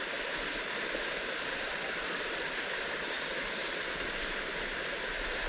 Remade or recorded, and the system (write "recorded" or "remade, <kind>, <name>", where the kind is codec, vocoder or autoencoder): recorded